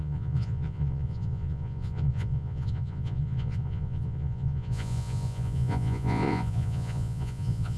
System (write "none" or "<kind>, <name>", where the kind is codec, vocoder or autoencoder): vocoder, Vocos